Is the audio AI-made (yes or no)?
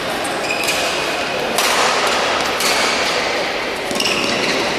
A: no